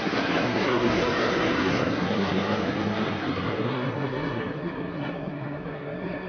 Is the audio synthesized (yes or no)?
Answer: yes